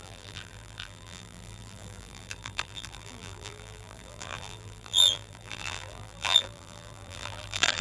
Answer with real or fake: fake